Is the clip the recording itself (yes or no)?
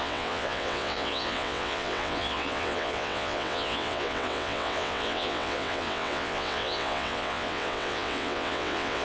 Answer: no